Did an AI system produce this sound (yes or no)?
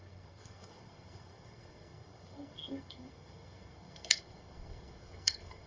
yes